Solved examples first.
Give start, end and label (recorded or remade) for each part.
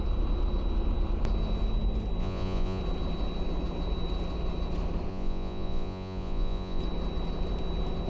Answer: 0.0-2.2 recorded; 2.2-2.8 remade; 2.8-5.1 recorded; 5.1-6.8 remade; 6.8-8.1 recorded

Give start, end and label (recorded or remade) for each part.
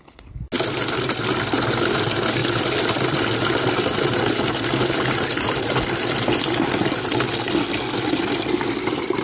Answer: 0.0-9.2 recorded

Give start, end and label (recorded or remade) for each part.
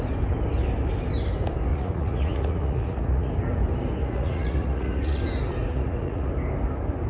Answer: 0.0-1.7 recorded; 1.7-3.3 remade; 3.3-4.0 recorded; 4.0-5.2 remade; 5.2-5.7 recorded; 5.7-6.3 remade; 6.3-7.1 recorded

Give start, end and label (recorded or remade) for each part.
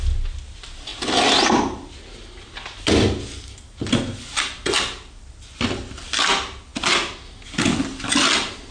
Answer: 0.0-8.7 recorded